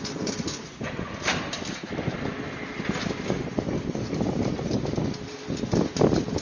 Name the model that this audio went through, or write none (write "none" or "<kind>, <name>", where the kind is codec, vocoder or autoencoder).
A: none